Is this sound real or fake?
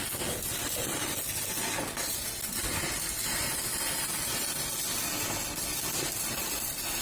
real